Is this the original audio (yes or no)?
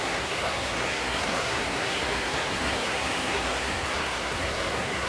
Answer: no